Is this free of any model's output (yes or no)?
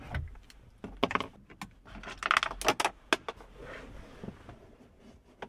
yes